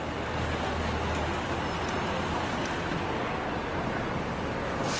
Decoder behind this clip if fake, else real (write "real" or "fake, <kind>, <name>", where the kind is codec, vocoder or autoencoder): real